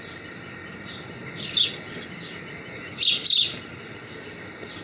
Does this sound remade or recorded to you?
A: recorded